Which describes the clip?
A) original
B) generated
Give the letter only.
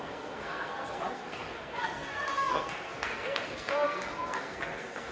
B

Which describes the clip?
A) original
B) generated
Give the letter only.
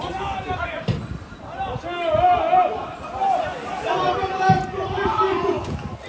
A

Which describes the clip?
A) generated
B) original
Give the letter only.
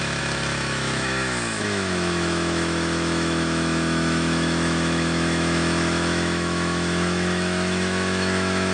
A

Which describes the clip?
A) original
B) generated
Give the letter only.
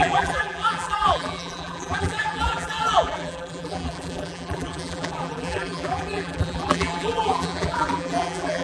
B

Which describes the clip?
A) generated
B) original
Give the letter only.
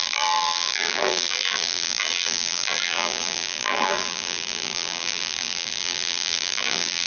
A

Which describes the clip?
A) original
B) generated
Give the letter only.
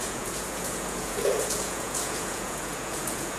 B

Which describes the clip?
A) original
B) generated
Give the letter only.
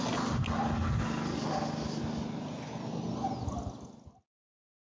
A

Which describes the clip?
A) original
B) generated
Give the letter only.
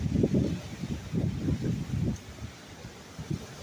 A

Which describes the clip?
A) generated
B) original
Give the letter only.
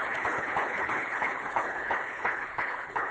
A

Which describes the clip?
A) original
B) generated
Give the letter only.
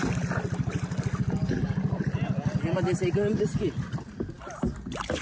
A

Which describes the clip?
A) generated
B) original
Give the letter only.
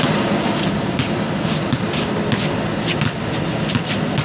B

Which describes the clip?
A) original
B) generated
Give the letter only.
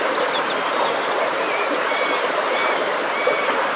A